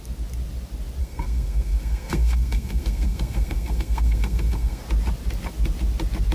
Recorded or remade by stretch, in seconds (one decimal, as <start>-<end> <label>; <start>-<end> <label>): 0.0-1.0 recorded; 1.0-4.8 remade; 4.8-6.3 recorded